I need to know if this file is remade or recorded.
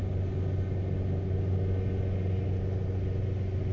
recorded